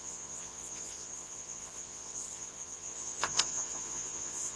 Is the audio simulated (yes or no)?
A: yes